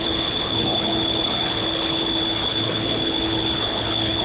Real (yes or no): no